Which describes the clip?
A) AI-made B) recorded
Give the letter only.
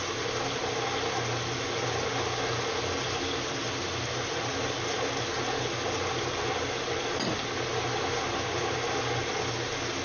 B